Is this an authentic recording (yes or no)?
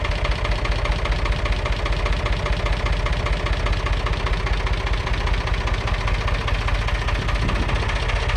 yes